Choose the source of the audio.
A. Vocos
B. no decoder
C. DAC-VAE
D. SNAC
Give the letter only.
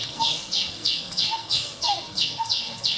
D